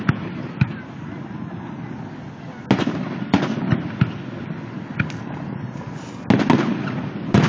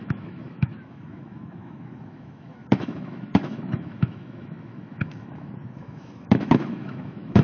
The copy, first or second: second